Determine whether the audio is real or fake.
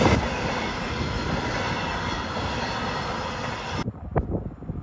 real